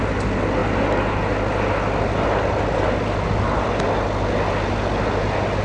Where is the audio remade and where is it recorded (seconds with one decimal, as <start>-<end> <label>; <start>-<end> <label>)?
0.0-5.6 recorded